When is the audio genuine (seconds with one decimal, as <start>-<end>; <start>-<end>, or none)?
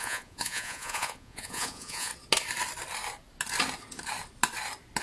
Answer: 2.1-5.0